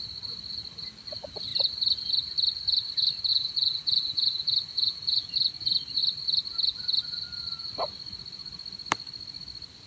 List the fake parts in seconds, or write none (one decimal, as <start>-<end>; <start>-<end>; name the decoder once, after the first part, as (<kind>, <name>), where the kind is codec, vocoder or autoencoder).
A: 3.3-5.3 (vocoder, Vocos)